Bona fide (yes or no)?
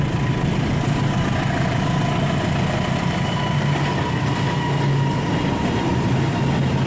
yes